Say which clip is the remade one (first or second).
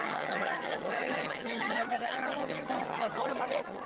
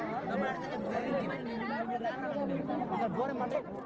first